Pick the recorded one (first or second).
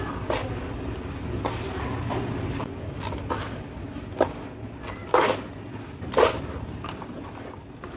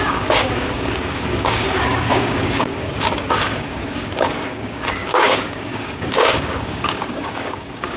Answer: first